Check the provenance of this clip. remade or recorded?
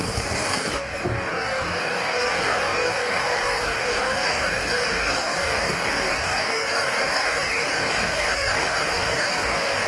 remade